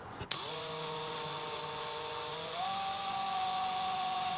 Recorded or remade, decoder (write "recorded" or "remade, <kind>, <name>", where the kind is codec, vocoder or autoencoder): remade, vocoder, Vocos